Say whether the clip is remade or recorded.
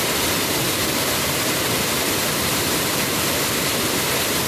recorded